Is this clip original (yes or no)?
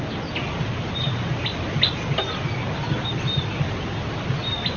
yes